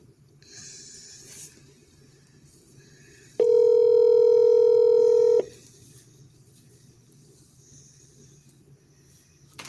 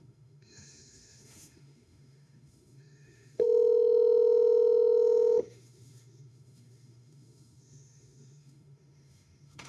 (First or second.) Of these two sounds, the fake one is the second